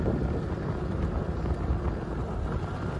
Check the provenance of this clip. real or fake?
real